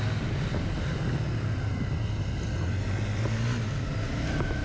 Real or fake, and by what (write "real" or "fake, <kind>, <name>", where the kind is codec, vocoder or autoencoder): real